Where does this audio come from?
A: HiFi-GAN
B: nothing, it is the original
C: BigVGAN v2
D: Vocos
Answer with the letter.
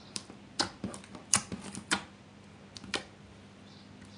C